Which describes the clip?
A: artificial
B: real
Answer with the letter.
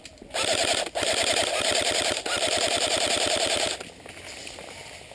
B